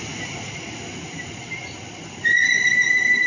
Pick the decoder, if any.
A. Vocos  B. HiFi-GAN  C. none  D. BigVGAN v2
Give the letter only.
C